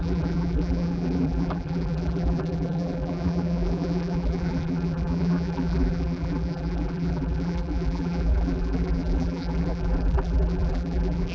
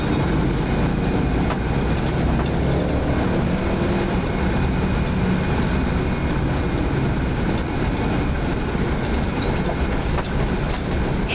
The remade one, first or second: first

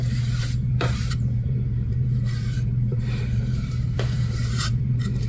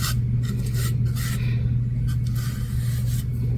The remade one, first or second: first